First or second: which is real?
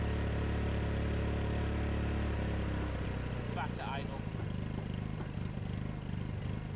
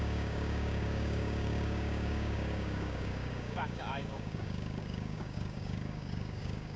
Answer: first